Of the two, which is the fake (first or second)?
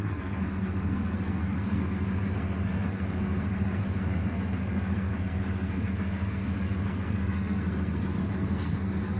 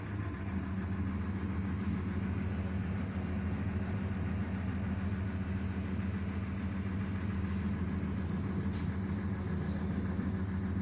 first